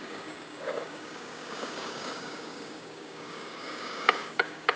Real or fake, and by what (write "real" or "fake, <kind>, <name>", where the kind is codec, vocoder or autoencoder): fake, codec, DAC